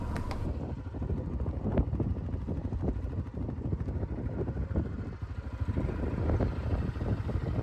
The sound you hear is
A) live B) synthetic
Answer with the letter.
A